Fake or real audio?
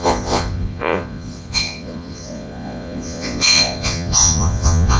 fake